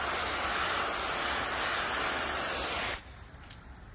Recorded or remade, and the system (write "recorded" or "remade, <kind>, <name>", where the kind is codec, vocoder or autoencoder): recorded